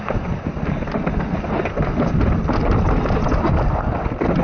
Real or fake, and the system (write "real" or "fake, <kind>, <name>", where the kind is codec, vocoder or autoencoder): real